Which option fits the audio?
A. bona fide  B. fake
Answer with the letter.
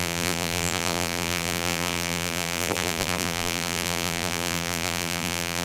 B